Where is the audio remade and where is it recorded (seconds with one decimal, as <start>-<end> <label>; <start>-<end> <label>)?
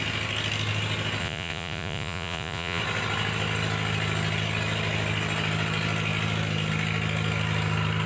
0.0-1.2 recorded; 1.2-2.8 remade; 2.8-8.1 recorded